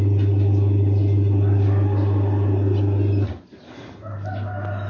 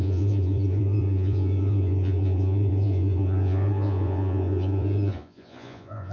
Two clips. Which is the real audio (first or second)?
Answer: first